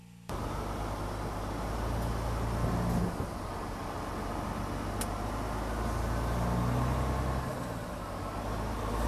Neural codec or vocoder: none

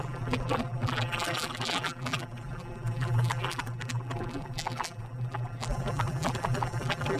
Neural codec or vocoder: vocoder, BigVGAN v2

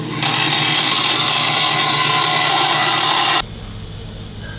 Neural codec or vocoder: none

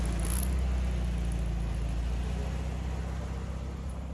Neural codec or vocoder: none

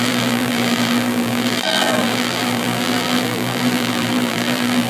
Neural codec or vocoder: vocoder, BigVGAN v2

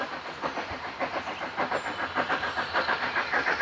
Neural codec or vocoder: vocoder, BigVGAN v2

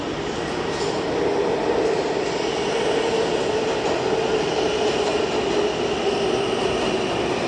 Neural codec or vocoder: none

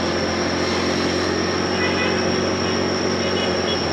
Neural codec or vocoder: none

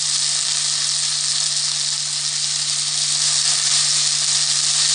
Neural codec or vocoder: none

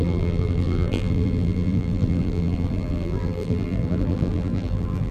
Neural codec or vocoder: vocoder, BigVGAN v2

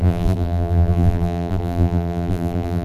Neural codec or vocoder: vocoder, BigVGAN v2